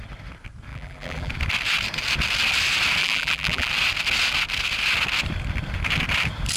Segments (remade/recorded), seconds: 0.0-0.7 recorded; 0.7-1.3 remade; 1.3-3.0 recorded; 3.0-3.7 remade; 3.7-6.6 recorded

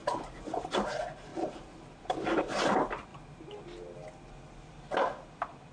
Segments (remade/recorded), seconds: 0.0-1.3 recorded; 1.3-2.6 remade; 2.6-5.7 recorded

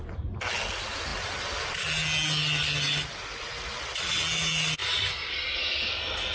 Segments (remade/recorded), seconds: 0.0-6.3 recorded

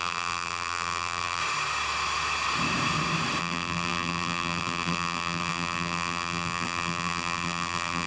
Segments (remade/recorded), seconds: 0.0-1.4 remade; 1.4-3.4 recorded; 3.4-8.1 remade

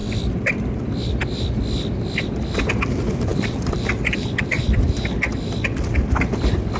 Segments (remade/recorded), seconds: 0.0-0.7 remade; 0.7-3.3 recorded; 3.3-4.6 remade; 4.6-6.8 recorded

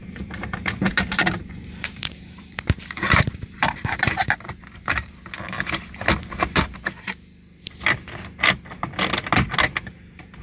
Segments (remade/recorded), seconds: 0.0-5.1 remade; 5.1-10.4 recorded

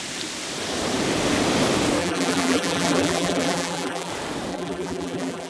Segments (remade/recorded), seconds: 0.0-2.0 recorded; 2.0-4.1 remade; 4.1-4.5 recorded; 4.5-5.5 remade